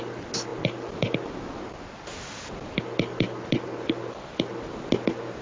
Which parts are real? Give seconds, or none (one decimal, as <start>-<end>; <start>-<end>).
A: 0.0-5.4

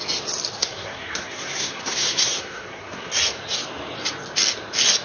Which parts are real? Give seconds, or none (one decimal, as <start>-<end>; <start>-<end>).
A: 0.0-0.6; 3.1-5.0

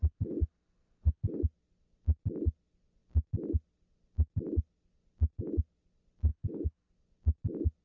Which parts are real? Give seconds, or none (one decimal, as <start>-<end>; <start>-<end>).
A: 1.4-6.3; 6.9-7.8